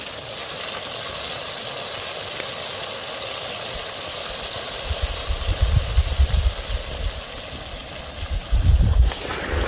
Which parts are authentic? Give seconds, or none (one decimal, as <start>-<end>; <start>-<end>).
0.0-5.5; 6.4-7.8